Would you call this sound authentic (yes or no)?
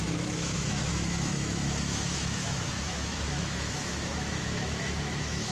no